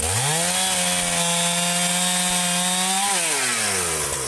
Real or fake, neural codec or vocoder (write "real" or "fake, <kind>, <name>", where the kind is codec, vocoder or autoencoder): real